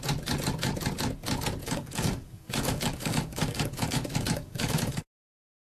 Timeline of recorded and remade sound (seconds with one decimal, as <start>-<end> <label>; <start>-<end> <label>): 0.0-1.6 recorded; 1.6-5.0 remade; 5.0-5.6 recorded